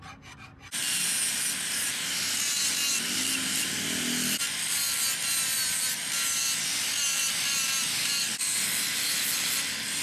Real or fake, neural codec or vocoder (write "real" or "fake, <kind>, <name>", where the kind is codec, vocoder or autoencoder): real